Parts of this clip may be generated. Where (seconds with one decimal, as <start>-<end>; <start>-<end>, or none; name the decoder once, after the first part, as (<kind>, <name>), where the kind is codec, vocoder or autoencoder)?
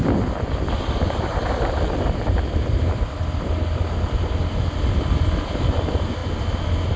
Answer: none